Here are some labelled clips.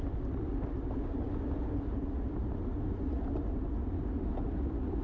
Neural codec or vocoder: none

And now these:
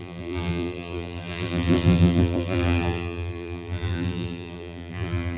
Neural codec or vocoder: vocoder, BigVGAN v2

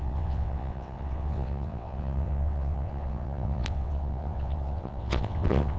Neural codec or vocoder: vocoder, WaveNeXt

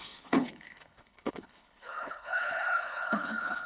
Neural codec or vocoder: codec, HILCodec